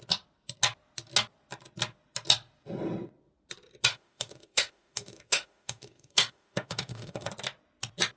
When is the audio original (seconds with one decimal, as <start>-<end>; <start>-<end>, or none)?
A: 0.0-3.9; 7.3-8.2